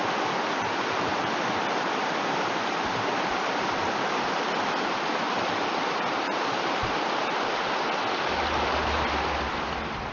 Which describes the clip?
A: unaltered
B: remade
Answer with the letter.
A